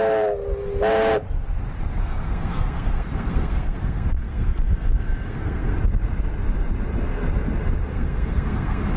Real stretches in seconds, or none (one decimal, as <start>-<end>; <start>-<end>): 0.0-2.0; 5.8-7.9